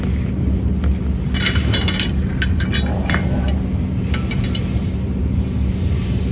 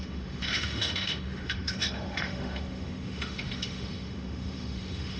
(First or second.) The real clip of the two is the first